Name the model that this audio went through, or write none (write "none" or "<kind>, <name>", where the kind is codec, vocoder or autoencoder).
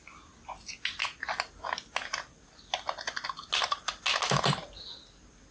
none